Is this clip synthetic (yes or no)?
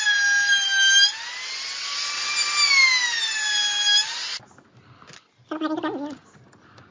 no